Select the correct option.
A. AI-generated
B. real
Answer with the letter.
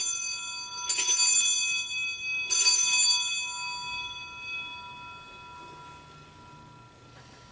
B